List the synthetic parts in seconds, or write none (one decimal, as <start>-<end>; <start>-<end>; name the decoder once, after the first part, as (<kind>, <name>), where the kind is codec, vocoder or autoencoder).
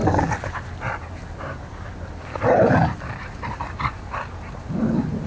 none